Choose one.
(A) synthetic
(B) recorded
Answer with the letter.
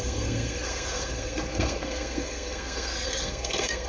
A